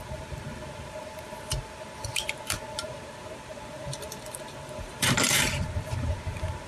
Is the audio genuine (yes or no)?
no